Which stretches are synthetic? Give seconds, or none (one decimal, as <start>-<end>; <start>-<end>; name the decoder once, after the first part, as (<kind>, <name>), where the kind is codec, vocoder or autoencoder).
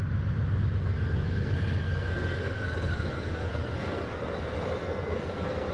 0.8-4.2 (codec, SNAC); 4.8-5.7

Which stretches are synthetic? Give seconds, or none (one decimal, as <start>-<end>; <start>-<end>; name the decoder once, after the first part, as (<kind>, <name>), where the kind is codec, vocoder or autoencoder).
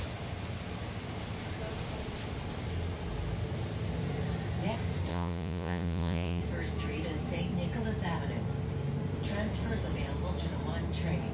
5.1-6.4 (vocoder, Vocos)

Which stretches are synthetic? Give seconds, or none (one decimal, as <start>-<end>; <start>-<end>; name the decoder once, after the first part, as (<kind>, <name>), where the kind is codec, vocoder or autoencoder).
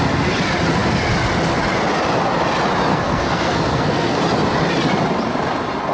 2.9-4.2 (codec, SNAC)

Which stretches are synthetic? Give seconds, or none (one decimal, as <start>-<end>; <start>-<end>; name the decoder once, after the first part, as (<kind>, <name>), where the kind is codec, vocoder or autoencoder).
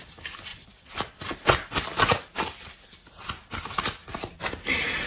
0.5-1.2 (vocoder, BigVGAN v2)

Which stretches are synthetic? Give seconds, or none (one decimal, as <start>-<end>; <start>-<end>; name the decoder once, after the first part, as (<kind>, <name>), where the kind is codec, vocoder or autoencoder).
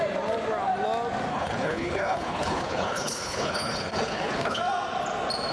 1.3-4.6 (codec, HILCodec)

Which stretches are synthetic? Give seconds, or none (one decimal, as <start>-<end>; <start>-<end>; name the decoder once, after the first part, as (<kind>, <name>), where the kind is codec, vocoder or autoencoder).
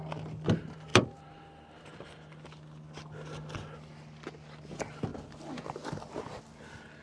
0.9-2.0 (vocoder, BigVGAN v2)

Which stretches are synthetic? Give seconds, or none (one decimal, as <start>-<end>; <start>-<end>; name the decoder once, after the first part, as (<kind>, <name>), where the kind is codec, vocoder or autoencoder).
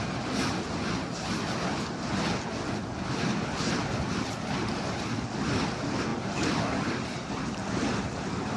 none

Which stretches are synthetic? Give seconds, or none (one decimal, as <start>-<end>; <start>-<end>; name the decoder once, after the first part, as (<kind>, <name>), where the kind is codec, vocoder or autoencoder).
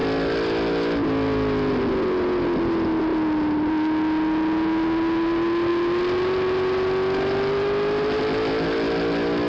none